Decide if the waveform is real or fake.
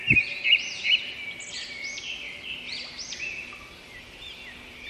real